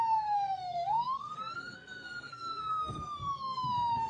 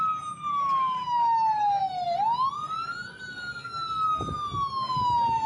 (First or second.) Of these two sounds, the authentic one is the second